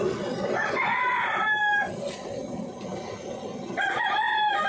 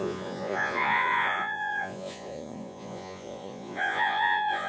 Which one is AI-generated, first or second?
second